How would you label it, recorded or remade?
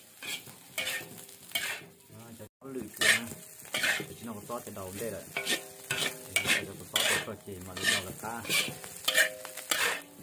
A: recorded